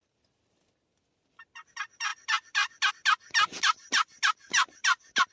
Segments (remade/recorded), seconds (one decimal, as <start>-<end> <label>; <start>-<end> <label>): 0.0-5.3 recorded